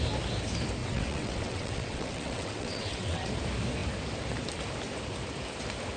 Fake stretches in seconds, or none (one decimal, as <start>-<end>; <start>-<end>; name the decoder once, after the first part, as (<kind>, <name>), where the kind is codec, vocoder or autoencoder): 0.8-3.3 (vocoder, WaveNeXt)